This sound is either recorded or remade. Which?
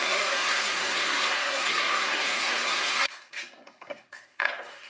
remade